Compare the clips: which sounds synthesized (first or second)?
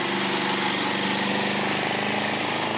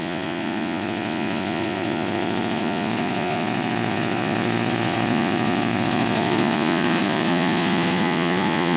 second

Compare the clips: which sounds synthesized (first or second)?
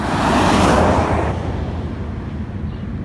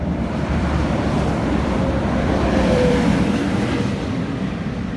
second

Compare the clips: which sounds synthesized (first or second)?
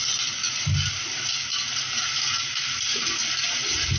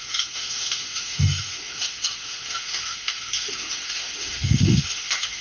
second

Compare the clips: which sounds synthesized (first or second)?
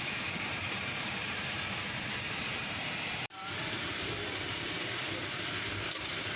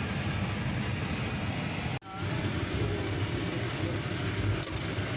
first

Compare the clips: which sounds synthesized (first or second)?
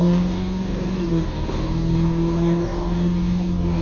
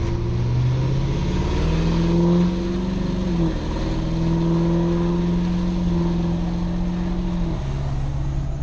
first